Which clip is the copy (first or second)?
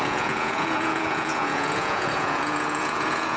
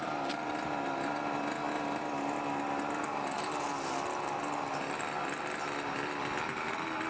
first